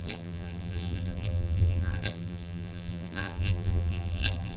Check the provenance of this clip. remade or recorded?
remade